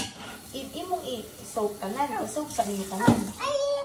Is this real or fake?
real